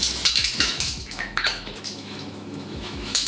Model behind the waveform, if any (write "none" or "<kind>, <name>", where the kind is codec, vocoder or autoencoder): autoencoder, DAC-VAE